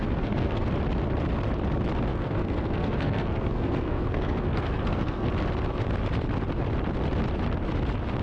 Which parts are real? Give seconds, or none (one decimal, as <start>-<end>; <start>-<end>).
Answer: 0.7-2.1; 5.3-8.2